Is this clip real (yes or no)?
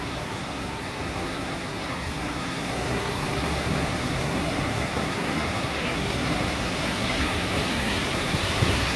no